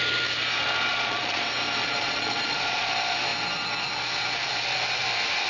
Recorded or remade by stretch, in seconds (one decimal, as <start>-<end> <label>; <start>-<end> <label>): 0.0-0.9 recorded; 0.9-1.4 remade; 1.4-1.8 recorded; 1.8-2.9 remade; 2.9-5.5 recorded